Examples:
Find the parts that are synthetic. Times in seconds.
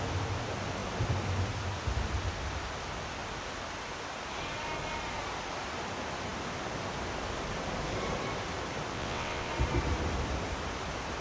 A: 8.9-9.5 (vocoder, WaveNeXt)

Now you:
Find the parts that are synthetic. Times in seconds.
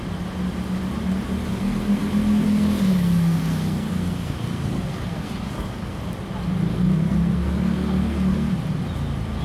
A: 1.5-6.0 (codec, SNAC); 6.7-8.5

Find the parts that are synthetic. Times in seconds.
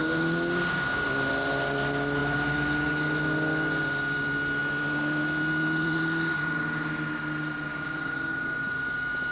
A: 7.7-8.3 (autoencoder, DAC-VAE)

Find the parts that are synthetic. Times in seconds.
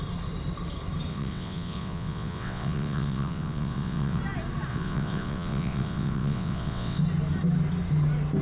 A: 1.1-4.2 (vocoder, WaveNeXt); 4.7-7.0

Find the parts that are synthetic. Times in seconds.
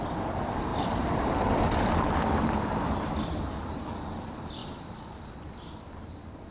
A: 0.0-0.7 (vocoder, BigVGAN v2); 3.1-6.5